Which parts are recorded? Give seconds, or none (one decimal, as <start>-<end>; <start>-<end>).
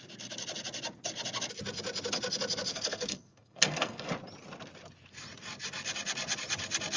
0.0-2.7; 4.1-7.0